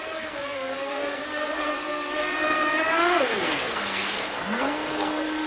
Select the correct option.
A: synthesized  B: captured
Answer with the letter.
A